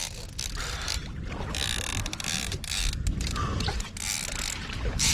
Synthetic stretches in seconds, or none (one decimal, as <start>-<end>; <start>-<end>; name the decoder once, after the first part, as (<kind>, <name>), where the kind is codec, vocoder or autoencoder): none